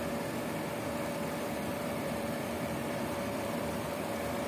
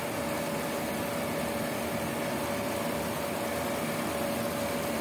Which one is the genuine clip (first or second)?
second